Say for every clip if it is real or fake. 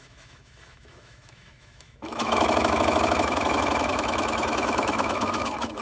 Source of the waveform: fake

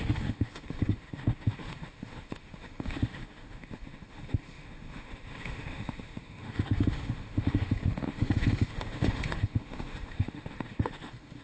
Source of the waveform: fake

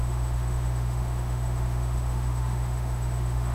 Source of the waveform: fake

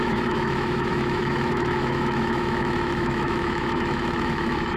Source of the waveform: fake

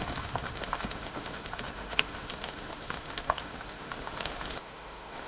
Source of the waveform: fake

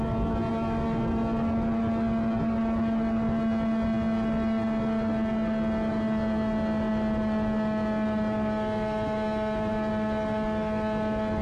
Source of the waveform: real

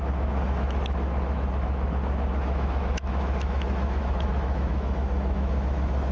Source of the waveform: fake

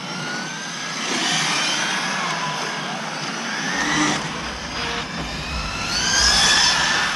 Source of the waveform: real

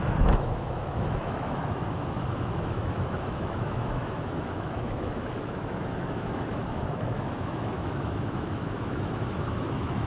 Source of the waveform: fake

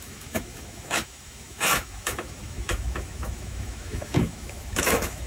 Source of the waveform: fake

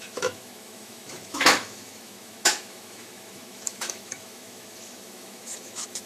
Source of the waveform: fake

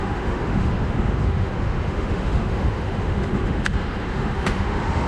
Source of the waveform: fake